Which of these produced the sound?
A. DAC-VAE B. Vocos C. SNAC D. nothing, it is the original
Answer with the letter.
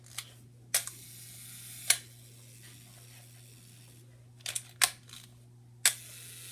D